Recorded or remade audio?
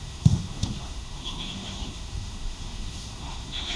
remade